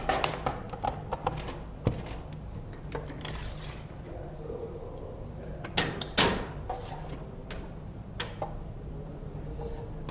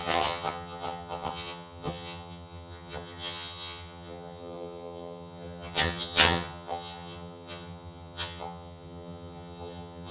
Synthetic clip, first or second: second